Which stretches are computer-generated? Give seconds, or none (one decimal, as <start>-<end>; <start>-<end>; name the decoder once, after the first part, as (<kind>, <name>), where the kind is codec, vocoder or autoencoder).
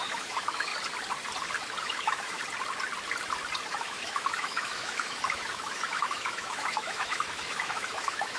0.0-0.7 (autoencoder, DAC-VAE); 1.8-2.4; 3.7-8.4